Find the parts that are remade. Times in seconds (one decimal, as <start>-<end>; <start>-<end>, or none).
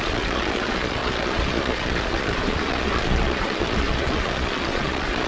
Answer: 0.0-5.3